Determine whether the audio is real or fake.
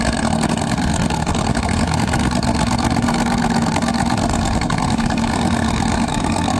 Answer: fake